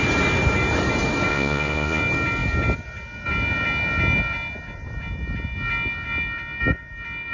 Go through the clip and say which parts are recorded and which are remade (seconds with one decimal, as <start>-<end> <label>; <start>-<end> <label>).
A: 0.0-1.3 recorded; 1.3-2.0 remade; 2.0-7.3 recorded